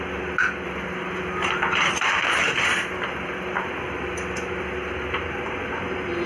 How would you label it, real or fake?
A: real